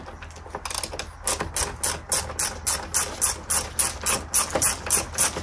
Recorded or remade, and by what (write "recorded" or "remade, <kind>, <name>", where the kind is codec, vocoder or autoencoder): recorded